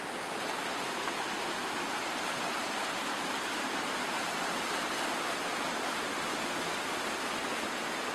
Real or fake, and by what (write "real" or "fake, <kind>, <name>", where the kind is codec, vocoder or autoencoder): real